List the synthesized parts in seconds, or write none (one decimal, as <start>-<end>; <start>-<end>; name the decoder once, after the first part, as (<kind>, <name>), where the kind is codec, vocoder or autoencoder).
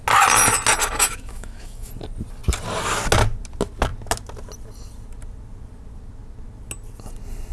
0.8-1.9 (autoencoder, DAC-VAE)